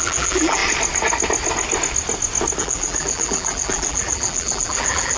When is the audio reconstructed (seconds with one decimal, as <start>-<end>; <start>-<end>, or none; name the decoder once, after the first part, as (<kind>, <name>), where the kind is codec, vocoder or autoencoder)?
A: 0.0-0.6 (vocoder, BigVGAN v2); 2.6-5.2